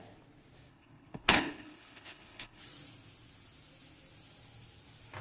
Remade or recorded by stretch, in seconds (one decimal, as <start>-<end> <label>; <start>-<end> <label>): 0.0-0.7 recorded; 0.7-2.6 remade; 2.6-5.2 recorded